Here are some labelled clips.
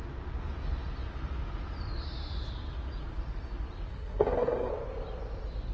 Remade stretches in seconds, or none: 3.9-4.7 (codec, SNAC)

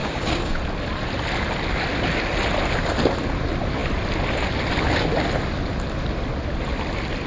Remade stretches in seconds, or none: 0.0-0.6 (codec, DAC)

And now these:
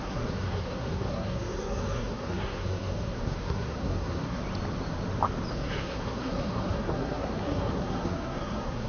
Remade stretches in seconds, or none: 0.0-4.4 (codec, SNAC); 5.5-8.9